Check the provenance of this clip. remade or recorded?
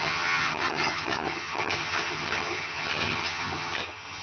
remade